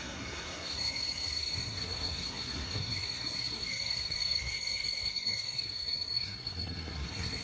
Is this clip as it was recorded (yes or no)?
no